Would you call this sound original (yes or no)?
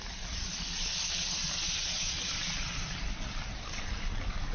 yes